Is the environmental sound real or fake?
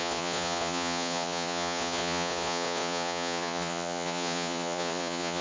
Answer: fake